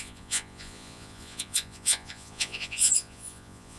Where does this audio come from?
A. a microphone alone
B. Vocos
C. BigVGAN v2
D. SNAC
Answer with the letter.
B